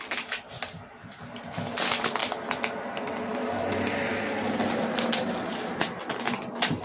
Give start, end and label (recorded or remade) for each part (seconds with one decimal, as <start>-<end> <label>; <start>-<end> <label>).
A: 0.0-6.8 recorded